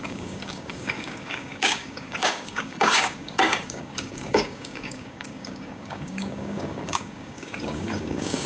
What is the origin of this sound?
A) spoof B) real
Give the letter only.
A